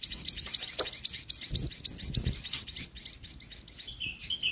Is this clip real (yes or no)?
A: yes